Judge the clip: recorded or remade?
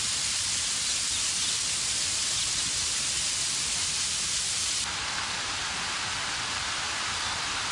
recorded